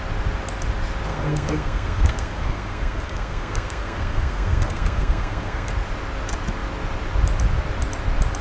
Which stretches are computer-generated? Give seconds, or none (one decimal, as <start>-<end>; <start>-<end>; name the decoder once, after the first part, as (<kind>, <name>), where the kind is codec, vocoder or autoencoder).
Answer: 1.1-5.7 (codec, SNAC)